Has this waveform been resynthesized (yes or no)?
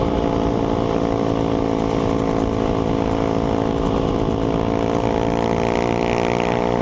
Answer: no